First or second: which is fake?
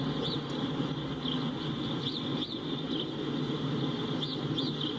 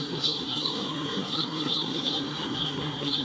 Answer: second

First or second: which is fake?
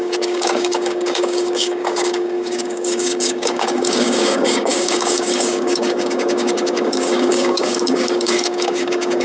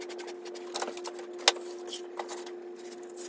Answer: first